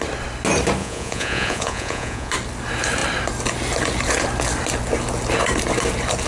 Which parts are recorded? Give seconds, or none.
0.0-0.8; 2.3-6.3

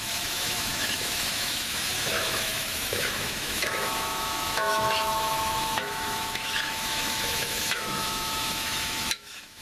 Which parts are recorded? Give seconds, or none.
none

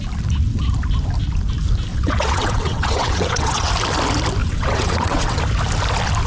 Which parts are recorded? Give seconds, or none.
0.0-1.9; 3.7-4.4; 5.4-6.3

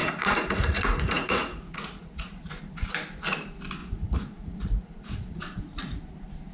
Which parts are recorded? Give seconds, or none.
2.4-3.8; 6.0-6.5

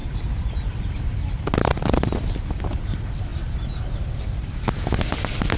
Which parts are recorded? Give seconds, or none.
0.0-5.6